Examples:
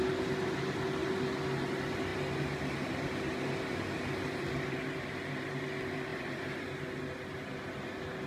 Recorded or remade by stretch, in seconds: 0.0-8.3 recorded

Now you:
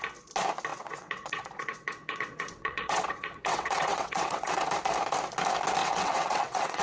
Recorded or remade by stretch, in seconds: 0.0-0.7 recorded; 0.7-4.7 remade; 4.7-5.8 recorded; 5.8-6.8 remade

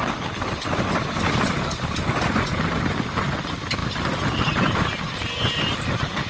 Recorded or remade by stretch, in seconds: 0.0-6.3 recorded

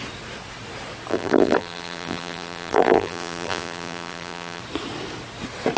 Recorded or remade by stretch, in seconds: 0.0-1.1 recorded; 1.1-4.6 remade; 4.6-5.8 recorded

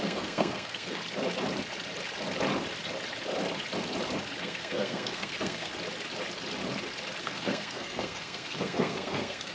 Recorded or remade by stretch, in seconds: 0.0-1.0 remade; 1.0-4.4 recorded; 4.4-5.7 remade; 5.7-7.2 recorded; 7.2-9.5 remade

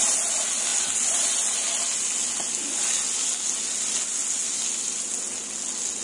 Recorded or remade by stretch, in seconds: 0.0-6.0 recorded